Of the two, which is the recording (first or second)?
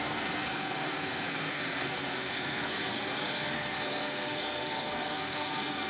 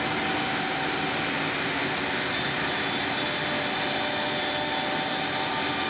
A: second